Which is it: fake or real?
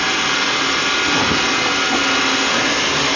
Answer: real